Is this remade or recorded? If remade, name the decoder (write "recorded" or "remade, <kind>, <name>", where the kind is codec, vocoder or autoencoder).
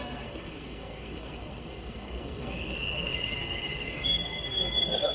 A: remade, codec, SNAC